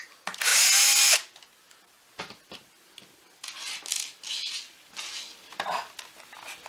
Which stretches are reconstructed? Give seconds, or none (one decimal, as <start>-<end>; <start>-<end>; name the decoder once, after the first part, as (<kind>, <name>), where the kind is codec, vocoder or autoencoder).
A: none